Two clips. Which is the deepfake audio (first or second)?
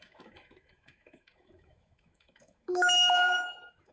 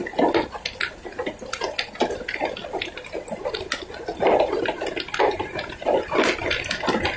first